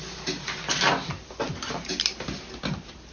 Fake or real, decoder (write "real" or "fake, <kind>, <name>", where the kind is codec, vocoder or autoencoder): real